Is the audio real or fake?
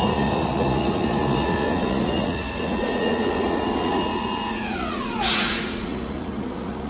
fake